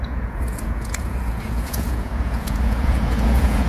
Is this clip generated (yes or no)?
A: yes